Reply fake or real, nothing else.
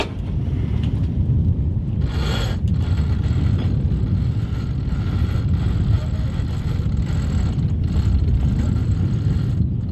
real